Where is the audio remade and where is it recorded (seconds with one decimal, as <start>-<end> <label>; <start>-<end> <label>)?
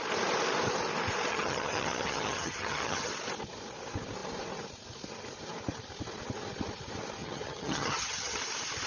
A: 0.0-1.3 recorded; 1.3-3.1 remade; 3.1-7.2 recorded; 7.2-8.4 remade; 8.4-8.9 recorded